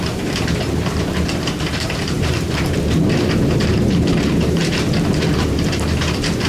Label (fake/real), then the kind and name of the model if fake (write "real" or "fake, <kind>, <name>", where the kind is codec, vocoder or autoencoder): fake, vocoder, BigVGAN v2